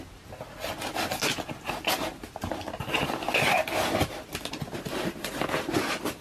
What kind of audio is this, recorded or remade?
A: recorded